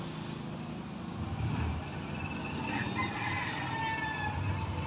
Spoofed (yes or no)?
no